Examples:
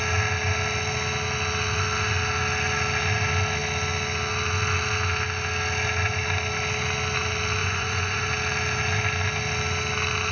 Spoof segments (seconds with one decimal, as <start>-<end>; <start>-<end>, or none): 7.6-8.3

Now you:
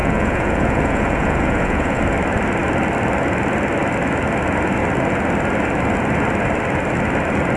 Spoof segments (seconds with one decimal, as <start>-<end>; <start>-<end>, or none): 0.0-2.0

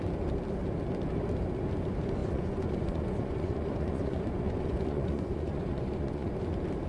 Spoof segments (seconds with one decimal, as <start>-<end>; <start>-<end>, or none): 2.2-6.3